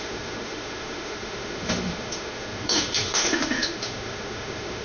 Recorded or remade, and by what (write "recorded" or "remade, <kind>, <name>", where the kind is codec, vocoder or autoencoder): remade, autoencoder, DAC-VAE